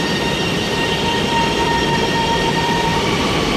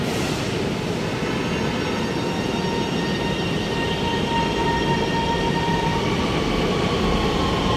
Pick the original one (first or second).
second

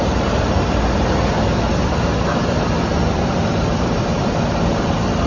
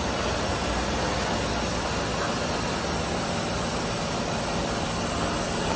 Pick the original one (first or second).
second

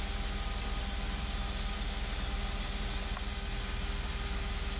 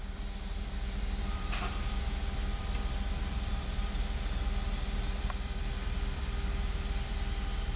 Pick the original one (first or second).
first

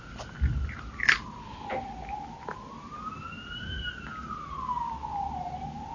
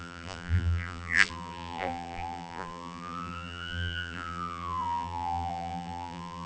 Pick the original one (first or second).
first